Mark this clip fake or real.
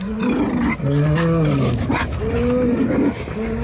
real